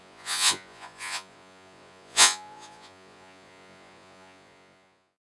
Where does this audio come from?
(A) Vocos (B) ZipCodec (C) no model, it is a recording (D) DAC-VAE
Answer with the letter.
A